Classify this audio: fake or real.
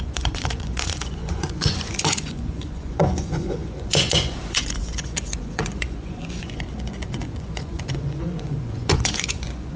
fake